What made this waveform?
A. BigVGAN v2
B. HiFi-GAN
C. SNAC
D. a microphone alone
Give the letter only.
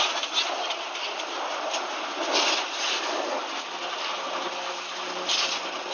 D